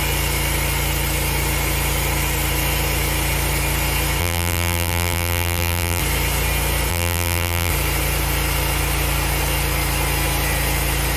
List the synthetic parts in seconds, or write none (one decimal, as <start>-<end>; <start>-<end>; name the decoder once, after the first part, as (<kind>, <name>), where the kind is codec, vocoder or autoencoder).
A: 4.2-6.0 (vocoder, BigVGAN v2); 6.9-7.7